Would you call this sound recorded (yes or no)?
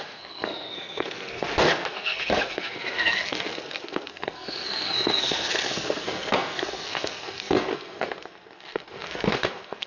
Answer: no